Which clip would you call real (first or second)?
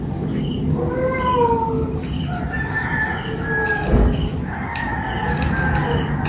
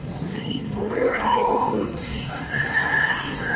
first